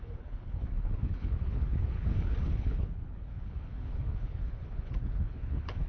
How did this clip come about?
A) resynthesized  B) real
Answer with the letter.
A